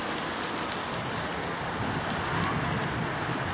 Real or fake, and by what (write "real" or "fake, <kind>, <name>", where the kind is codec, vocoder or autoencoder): real